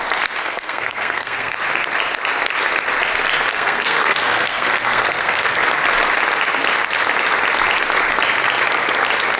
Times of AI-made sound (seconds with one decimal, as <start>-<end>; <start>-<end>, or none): 0.4-1.6; 3.5-5.6